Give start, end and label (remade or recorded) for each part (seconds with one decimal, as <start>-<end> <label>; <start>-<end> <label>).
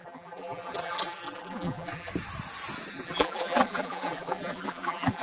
0.0-2.1 remade; 2.1-2.9 recorded; 2.9-5.2 remade